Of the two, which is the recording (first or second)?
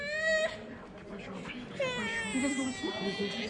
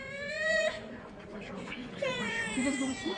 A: first